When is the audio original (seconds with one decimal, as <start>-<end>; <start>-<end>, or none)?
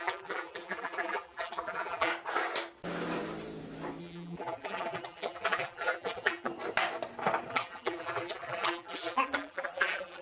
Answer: 2.1-4.0; 6.5-7.5